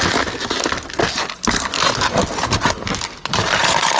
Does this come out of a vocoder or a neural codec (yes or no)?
no